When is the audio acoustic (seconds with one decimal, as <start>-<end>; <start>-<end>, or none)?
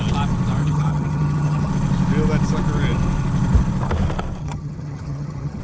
0.0-0.6; 1.7-4.4